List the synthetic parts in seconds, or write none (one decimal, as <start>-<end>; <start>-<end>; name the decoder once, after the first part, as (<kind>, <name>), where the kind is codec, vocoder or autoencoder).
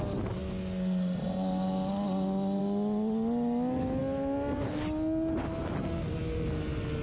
none